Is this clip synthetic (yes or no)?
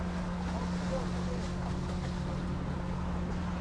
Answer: no